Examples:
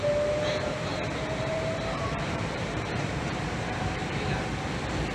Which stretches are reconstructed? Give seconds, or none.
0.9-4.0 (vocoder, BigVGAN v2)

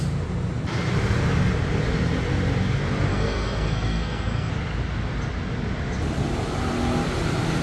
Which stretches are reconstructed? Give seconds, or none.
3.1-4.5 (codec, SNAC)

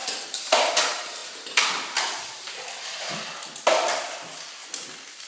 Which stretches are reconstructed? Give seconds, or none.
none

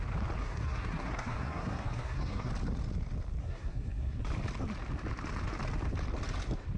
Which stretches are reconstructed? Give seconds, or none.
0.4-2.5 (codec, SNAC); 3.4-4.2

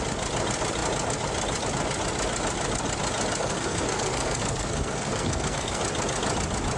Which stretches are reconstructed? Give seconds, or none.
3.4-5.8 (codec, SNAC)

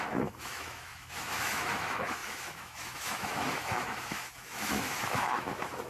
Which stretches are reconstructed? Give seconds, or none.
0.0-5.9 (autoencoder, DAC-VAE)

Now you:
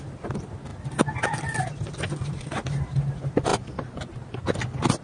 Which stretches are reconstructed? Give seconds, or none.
3.5-4.6 (vocoder, BigVGAN v2)

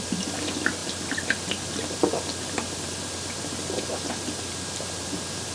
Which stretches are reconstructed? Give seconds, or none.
none